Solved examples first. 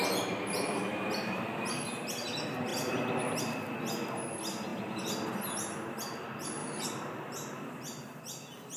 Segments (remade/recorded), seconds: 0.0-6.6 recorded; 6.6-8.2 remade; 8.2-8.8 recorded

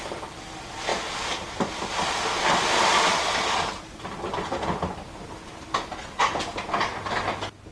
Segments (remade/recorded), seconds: 0.0-7.7 recorded

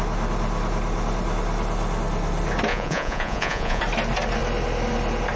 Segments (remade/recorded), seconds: 0.0-2.7 recorded; 2.7-3.8 remade; 3.8-5.4 recorded

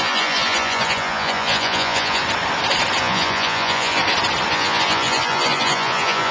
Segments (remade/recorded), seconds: 0.0-2.2 remade; 2.2-3.0 recorded; 3.0-4.0 remade; 4.0-4.5 recorded; 4.5-6.3 remade

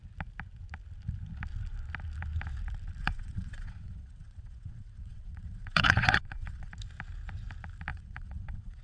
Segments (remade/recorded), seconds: 0.0-3.0 recorded; 3.0-6.7 remade; 6.7-7.9 recorded; 7.9-8.8 remade

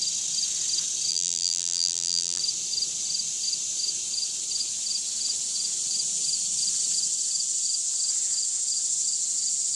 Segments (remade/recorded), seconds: 0.0-1.1 recorded; 1.1-2.4 remade; 2.4-9.8 recorded